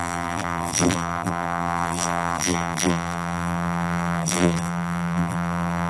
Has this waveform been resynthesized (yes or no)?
yes